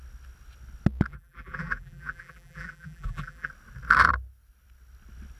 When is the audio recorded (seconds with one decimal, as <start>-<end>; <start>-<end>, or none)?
0.0-1.1; 3.5-5.4